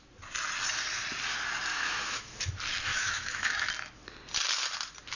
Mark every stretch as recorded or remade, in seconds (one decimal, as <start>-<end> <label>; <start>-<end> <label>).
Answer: 0.0-1.7 recorded; 1.7-2.3 remade; 2.3-2.9 recorded; 2.9-3.7 remade; 3.7-5.2 recorded